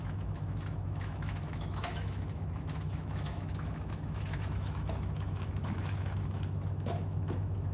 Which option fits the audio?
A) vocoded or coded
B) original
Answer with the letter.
A